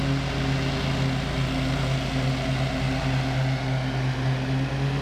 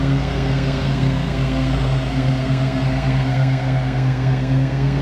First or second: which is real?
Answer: first